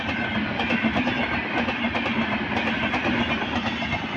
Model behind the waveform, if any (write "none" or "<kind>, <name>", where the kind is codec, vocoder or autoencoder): none